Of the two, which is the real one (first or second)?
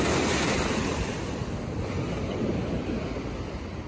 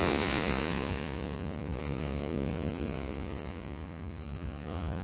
first